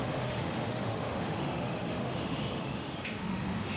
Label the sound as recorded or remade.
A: remade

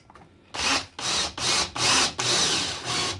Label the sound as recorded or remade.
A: recorded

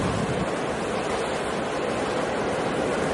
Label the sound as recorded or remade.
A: recorded